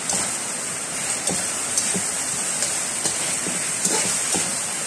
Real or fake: real